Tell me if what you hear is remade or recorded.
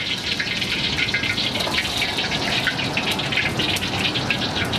recorded